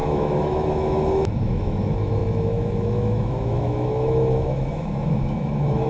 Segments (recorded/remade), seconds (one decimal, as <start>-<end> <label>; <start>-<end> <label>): 0.0-5.9 remade